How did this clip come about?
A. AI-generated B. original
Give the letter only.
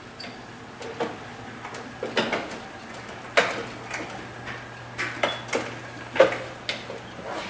B